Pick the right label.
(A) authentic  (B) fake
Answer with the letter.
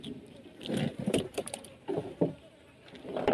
B